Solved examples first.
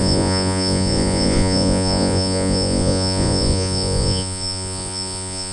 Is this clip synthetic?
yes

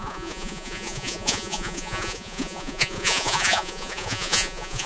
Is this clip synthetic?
yes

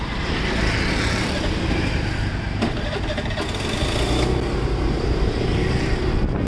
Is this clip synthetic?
no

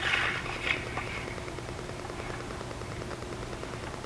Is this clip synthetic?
no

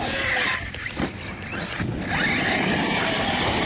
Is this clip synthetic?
no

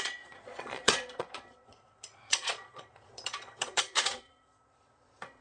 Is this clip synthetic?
yes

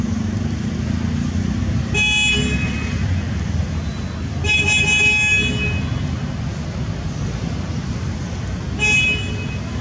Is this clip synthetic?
no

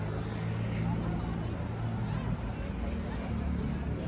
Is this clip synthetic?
no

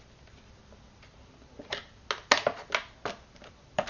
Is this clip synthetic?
no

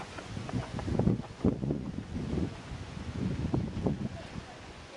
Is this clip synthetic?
yes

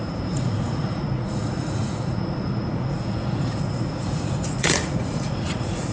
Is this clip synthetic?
yes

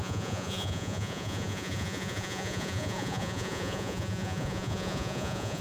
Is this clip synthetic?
yes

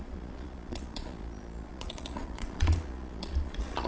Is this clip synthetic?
yes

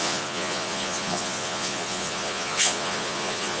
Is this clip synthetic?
yes